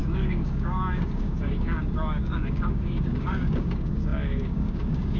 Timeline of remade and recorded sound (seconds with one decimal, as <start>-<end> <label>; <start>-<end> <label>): 0.0-5.2 remade